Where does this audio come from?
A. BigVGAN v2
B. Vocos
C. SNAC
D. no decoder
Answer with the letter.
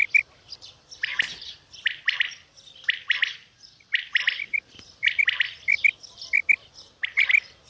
D